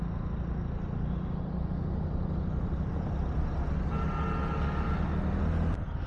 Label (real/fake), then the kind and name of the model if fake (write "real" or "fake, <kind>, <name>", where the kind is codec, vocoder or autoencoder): real